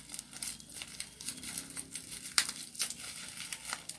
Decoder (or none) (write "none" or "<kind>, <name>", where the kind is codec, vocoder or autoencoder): none